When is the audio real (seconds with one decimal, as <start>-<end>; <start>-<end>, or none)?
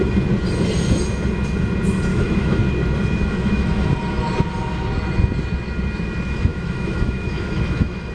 0.0-2.1; 2.6-3.2; 3.9-6.5